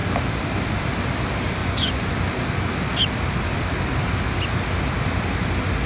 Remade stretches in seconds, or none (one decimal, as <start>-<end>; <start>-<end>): 1.6-2.1